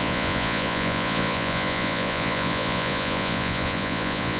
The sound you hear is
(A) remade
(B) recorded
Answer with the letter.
A